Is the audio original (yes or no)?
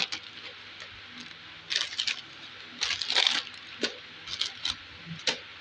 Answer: yes